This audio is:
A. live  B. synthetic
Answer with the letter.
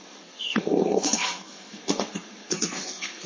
B